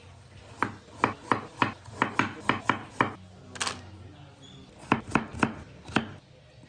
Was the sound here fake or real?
real